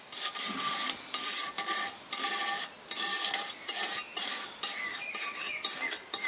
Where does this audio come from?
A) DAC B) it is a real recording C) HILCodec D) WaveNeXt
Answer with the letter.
B